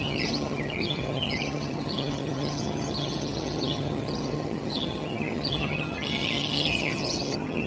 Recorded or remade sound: remade